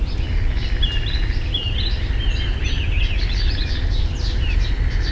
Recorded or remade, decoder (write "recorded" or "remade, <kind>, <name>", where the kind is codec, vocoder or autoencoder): recorded